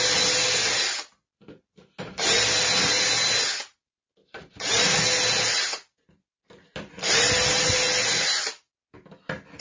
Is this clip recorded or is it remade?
recorded